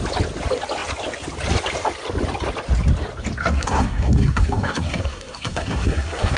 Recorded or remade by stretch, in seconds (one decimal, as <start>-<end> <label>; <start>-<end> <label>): 0.0-3.4 recorded; 3.4-6.4 remade